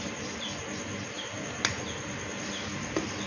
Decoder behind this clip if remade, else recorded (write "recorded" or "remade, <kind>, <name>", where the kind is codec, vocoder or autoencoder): recorded